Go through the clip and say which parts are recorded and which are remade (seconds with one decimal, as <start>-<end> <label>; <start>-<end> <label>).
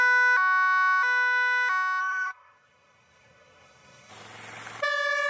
0.0-2.0 recorded; 2.0-4.1 remade; 4.1-5.3 recorded